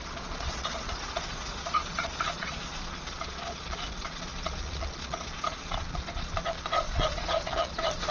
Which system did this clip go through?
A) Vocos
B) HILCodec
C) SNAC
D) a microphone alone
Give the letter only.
A